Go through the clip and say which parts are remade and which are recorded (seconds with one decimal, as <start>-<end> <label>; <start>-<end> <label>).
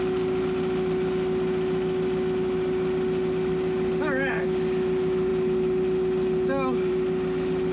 0.0-7.7 recorded